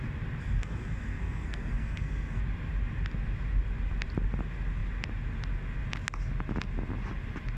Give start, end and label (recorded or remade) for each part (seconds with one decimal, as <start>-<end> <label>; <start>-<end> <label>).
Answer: 0.0-0.4 recorded; 0.4-2.4 remade; 2.4-7.6 recorded